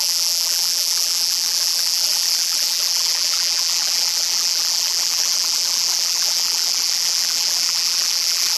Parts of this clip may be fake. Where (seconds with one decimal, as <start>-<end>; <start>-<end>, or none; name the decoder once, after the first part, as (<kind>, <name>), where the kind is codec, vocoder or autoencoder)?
0.0-8.6 (vocoder, BigVGAN v2)